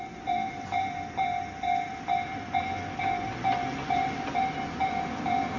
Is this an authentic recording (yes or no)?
yes